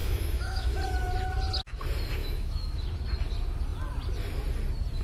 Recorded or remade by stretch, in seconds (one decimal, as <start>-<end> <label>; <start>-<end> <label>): 0.0-0.8 remade; 0.8-2.2 recorded; 2.2-2.8 remade; 2.8-5.0 recorded